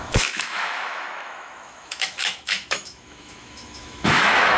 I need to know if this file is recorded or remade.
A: remade